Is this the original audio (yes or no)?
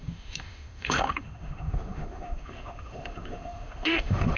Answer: no